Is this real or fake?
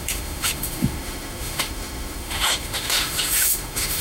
fake